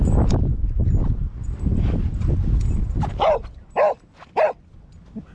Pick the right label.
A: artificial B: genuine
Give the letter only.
B